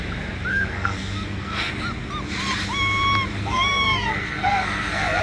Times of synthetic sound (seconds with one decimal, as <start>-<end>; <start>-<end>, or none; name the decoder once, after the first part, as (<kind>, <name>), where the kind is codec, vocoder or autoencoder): 0.5-1.7 (codec, SNAC); 3.3-5.2